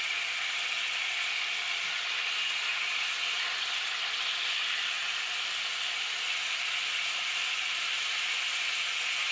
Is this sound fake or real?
real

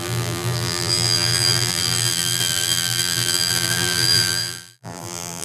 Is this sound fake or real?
fake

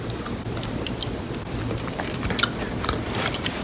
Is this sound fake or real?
fake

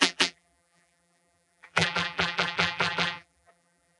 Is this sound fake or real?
fake